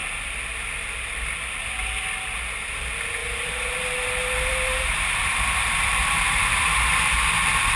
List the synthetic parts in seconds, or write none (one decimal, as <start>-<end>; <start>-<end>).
3.2-7.1